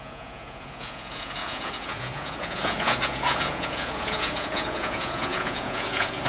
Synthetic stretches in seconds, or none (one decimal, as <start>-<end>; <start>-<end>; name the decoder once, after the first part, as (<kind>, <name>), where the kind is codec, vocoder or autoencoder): 0.0-6.3 (vocoder, Vocos)